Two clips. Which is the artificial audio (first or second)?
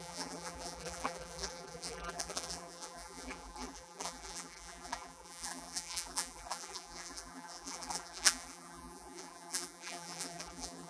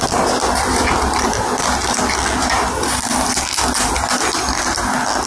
first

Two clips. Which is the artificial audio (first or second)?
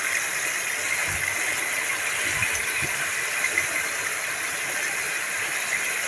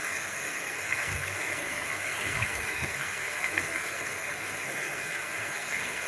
second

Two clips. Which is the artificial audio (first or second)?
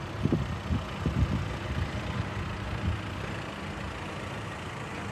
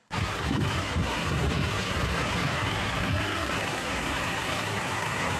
second